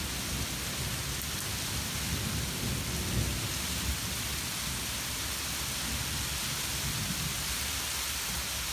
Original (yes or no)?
yes